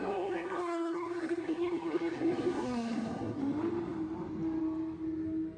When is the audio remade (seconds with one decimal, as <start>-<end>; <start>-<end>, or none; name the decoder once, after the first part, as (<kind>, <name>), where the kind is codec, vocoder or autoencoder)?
0.0-3.4 (codec, SNAC)